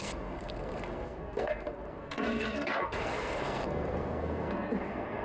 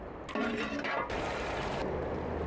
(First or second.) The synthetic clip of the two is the first